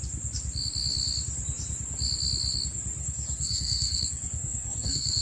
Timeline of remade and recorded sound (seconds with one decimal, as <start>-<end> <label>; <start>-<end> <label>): 0.0-3.0 recorded; 3.0-5.2 remade